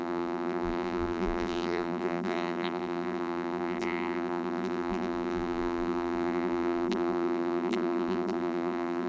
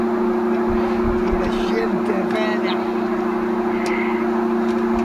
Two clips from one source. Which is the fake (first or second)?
first